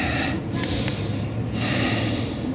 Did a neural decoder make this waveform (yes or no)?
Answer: no